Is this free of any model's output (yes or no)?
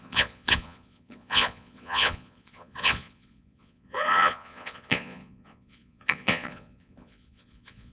no